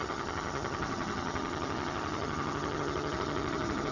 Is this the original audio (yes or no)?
no